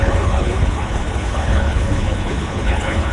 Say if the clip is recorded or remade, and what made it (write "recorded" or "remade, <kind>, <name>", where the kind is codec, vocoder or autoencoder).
remade, codec, HILCodec